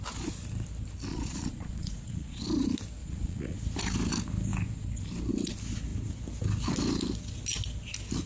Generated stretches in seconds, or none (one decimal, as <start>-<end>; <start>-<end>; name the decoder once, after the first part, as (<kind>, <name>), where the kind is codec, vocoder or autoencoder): 1.1-2.4 (vocoder, Vocos); 3.0-3.6